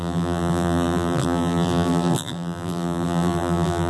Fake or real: fake